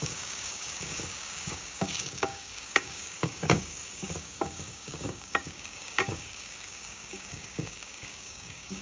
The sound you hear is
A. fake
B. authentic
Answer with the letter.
A